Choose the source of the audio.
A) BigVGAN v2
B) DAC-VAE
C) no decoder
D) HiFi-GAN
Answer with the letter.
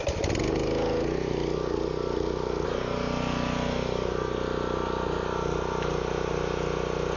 C